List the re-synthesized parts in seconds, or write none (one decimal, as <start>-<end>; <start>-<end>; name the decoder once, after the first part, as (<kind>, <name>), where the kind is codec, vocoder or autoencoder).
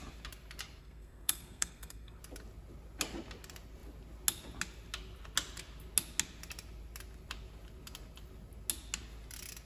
0.8-2.2 (codec, SNAC)